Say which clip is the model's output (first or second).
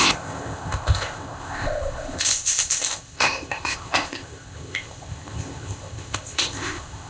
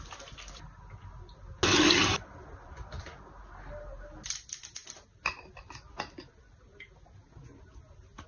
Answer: first